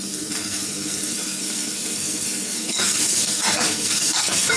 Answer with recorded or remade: remade